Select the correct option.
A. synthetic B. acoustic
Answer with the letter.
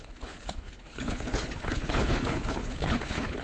A